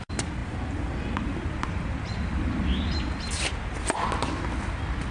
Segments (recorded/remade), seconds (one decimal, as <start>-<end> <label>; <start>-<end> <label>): 0.0-5.1 recorded